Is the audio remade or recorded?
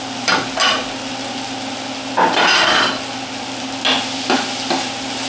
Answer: recorded